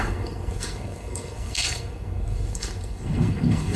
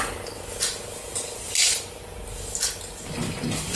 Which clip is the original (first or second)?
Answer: second